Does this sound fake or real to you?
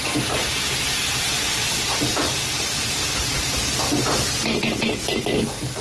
real